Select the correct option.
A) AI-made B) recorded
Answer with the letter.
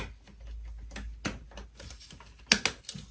B